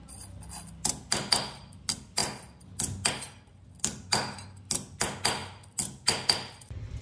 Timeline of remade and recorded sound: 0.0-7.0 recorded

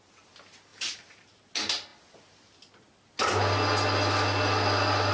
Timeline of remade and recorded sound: 0.0-0.7 recorded; 0.7-1.3 remade; 1.3-5.1 recorded

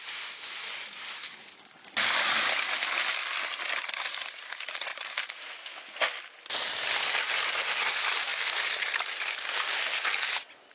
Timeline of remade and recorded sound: 0.0-10.7 recorded